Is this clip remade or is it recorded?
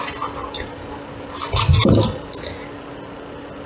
recorded